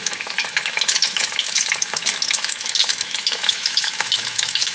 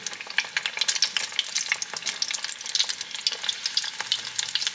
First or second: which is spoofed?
first